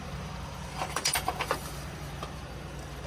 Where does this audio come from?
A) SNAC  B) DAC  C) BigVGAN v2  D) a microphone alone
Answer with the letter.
C